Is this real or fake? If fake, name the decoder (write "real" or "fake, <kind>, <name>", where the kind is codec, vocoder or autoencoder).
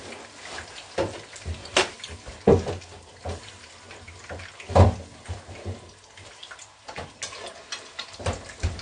real